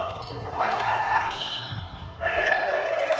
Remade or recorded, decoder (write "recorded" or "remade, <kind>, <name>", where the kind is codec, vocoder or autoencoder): remade, codec, SNAC